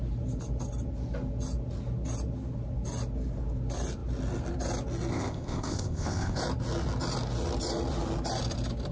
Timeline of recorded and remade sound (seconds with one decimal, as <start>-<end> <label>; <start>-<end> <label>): 0.0-5.1 recorded; 5.1-6.4 remade; 6.4-8.9 recorded